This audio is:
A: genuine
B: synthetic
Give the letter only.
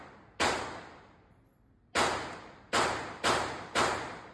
A